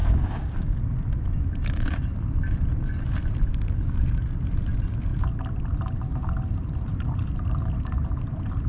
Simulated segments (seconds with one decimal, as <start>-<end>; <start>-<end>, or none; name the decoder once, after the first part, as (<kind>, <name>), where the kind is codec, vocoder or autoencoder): 0.0-0.8 (codec, DAC)